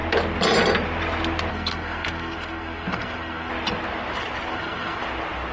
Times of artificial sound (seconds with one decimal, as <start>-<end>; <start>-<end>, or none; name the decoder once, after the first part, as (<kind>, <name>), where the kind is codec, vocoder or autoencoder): 1.5-3.5 (codec, SNAC); 4.5-5.0